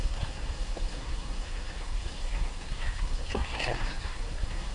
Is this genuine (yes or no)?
no